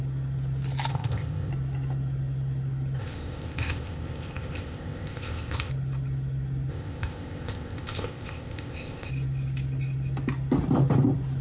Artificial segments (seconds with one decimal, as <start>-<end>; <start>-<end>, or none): 0.9-1.5; 3.0-5.7; 6.7-9.1